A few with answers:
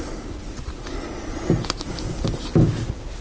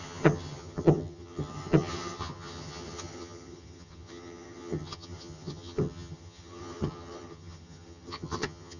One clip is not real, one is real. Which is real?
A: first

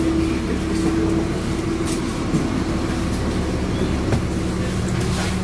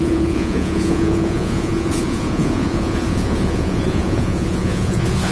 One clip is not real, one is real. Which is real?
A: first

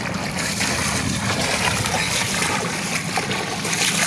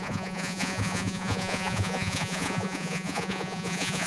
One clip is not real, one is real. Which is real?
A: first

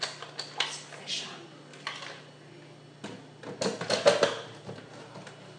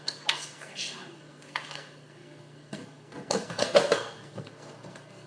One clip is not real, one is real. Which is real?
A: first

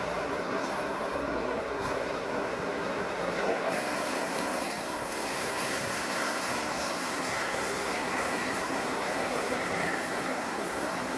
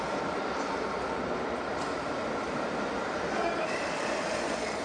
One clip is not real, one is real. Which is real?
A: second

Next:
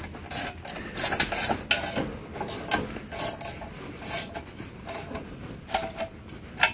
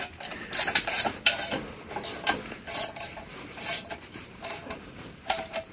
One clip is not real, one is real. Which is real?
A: first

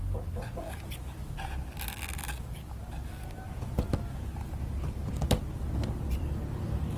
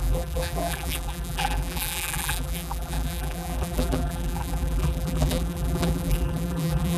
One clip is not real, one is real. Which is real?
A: first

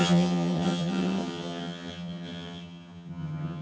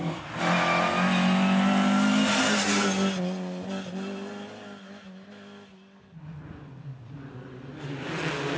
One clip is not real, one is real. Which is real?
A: second